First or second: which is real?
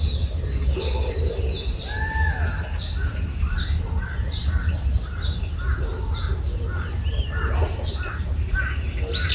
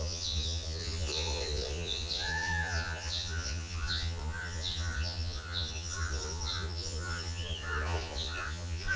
first